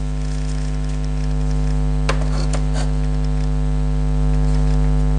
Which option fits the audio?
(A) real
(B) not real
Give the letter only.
A